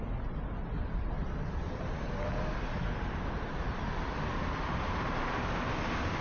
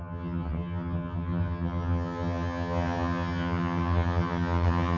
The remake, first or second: second